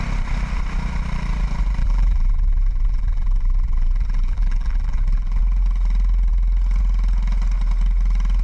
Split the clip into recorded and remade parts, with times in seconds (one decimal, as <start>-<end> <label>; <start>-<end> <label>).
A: 0.0-1.8 recorded; 1.8-5.4 remade; 5.4-8.4 recorded

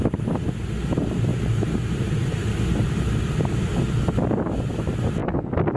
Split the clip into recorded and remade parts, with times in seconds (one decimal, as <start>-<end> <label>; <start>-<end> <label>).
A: 0.0-1.3 recorded; 1.3-4.0 remade; 4.0-5.8 recorded

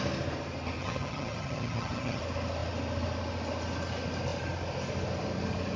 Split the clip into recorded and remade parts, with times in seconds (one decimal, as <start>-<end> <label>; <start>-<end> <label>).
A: 0.0-0.8 recorded; 0.8-2.2 remade; 2.2-5.8 recorded

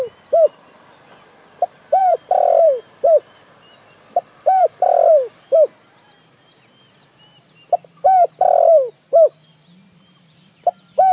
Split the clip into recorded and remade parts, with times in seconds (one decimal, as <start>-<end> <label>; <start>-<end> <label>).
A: 0.0-2.0 recorded; 2.0-5.1 remade; 5.1-11.1 recorded

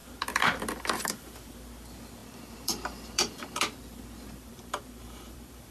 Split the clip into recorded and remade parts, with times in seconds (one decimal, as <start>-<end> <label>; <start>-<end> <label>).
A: 0.0-5.7 remade

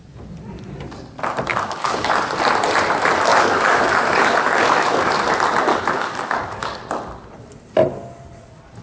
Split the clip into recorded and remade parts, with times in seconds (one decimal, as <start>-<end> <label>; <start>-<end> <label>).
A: 0.0-1.5 recorded; 1.5-2.1 remade; 2.1-3.3 recorded; 3.3-5.3 remade; 5.3-5.7 recorded; 5.7-6.8 remade; 6.8-8.8 recorded

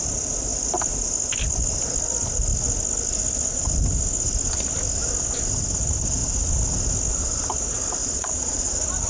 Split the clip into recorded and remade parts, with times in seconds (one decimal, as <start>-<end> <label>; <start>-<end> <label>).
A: 0.0-8.0 recorded; 8.0-8.7 remade; 8.7-9.1 recorded

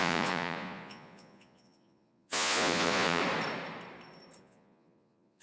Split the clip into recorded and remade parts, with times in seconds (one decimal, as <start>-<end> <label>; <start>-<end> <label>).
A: 0.0-3.2 remade; 3.2-4.4 recorded; 4.4-5.4 remade